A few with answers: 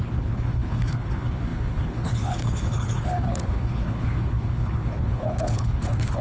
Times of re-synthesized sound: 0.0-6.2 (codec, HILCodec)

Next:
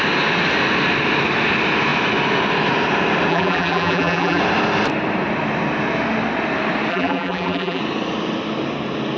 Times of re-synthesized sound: 3.3-4.4 (vocoder, BigVGAN v2); 6.9-7.8

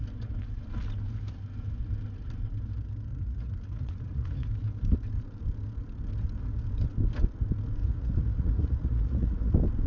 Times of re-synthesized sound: 3.1-4.5 (vocoder, Vocos); 7.8-9.5